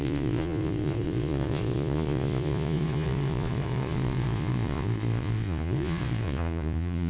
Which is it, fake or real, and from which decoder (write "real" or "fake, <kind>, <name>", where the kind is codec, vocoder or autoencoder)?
fake, vocoder, Vocos